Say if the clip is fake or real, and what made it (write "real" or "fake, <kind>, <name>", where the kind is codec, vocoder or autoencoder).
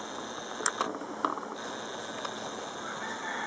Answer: real